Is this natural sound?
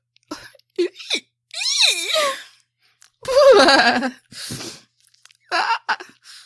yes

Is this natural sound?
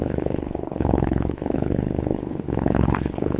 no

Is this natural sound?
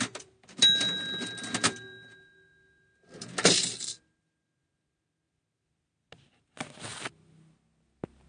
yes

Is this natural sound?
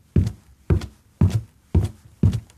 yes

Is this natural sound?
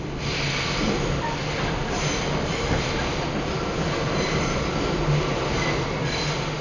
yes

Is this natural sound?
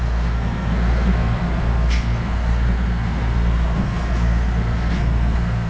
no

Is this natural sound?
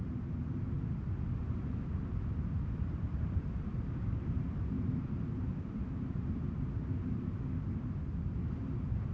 yes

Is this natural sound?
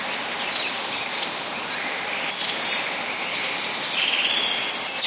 yes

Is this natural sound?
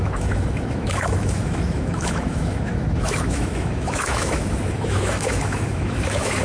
no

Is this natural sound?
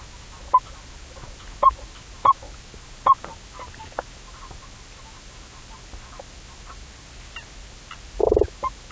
yes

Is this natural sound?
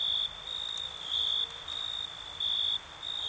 yes